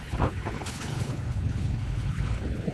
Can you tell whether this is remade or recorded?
remade